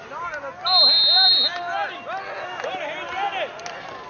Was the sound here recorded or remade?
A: recorded